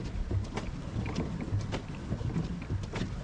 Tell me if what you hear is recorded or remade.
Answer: recorded